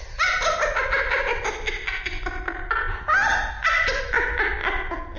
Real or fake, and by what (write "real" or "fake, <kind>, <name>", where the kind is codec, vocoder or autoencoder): real